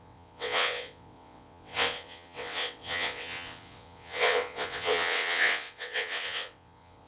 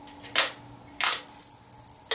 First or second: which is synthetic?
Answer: first